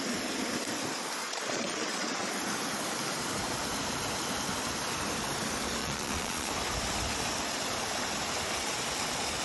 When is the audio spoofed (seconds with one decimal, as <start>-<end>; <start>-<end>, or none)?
1.2-2.3; 5.8-6.5